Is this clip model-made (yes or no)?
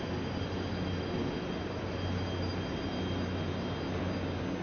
no